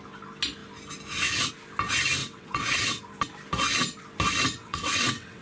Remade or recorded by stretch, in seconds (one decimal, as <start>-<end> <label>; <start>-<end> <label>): 0.0-2.2 recorded; 2.2-3.0 remade; 3.0-4.5 recorded; 4.5-5.4 remade